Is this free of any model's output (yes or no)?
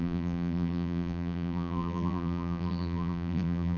no